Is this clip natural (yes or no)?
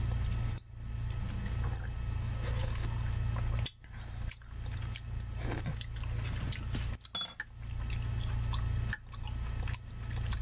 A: yes